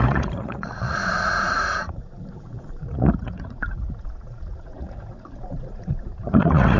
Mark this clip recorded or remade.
remade